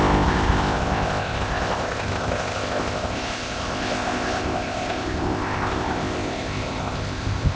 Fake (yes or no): yes